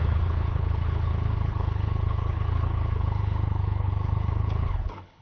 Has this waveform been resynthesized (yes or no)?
yes